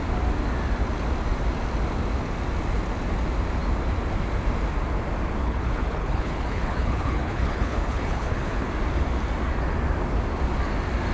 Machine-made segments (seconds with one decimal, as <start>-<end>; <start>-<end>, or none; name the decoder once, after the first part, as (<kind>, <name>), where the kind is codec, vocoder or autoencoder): 5.4-8.7 (codec, HILCodec)